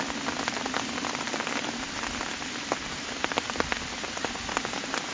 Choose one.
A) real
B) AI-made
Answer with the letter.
A